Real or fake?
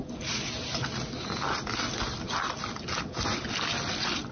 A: real